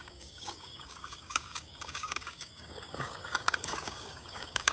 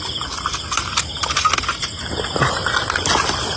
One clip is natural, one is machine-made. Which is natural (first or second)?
second